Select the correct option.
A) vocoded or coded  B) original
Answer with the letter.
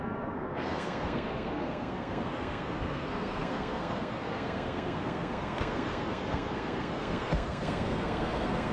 A